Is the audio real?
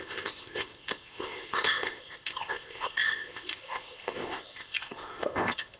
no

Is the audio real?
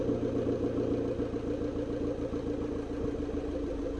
yes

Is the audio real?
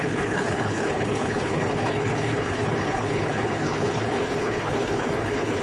no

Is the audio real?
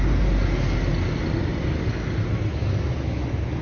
yes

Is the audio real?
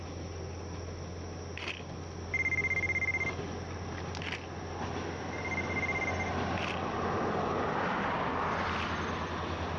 yes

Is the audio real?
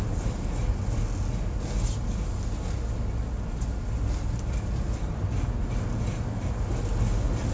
yes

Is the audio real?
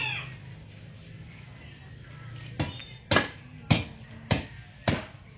yes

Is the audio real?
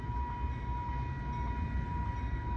yes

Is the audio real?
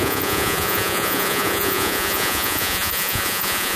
no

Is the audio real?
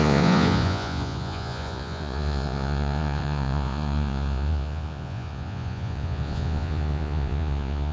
no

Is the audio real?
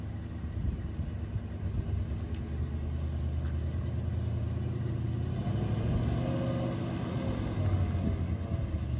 yes